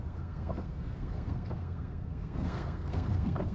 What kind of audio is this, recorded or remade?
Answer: remade